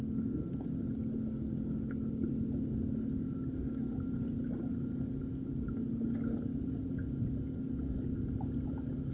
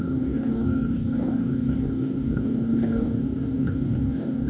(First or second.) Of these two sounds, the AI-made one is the second